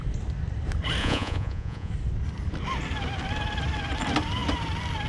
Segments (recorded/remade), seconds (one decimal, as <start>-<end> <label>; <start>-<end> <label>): 0.0-1.0 recorded; 1.0-1.9 remade; 1.9-5.1 recorded